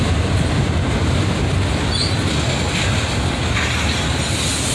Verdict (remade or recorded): recorded